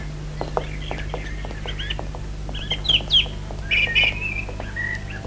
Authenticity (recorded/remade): recorded